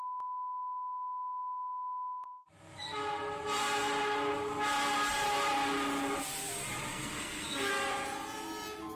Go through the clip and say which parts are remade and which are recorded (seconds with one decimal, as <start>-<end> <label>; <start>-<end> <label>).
0.0-6.9 recorded; 6.9-7.7 remade; 7.7-9.0 recorded